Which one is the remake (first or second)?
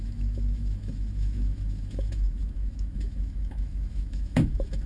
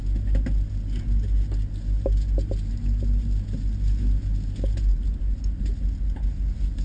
first